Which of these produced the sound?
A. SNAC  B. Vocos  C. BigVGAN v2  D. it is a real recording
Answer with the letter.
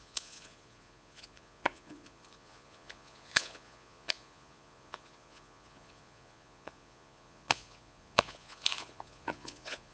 B